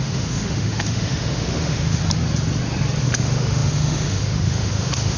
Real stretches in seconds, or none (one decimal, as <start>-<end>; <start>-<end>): 2.0-3.0